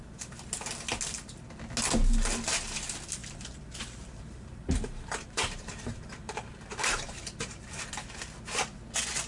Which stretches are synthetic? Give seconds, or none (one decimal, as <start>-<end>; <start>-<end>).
3.2-7.8